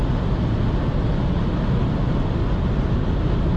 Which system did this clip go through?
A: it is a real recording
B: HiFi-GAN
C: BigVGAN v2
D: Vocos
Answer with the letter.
A